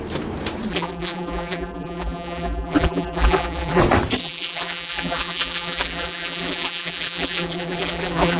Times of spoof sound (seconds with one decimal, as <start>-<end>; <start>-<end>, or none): 0.7-3.8; 4.2-8.4